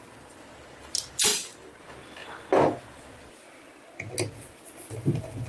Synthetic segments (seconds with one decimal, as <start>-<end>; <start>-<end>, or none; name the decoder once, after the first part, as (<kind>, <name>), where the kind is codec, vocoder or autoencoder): 1.3-1.8 (vocoder, BigVGAN v2)